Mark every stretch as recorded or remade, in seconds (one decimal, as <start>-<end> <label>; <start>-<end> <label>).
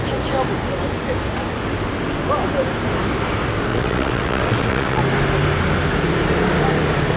0.0-3.7 recorded; 3.7-5.0 remade; 5.0-7.2 recorded